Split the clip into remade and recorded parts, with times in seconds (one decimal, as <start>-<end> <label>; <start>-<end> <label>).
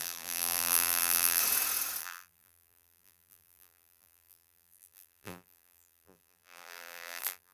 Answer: 0.0-1.4 remade; 1.4-2.0 recorded; 2.0-7.5 remade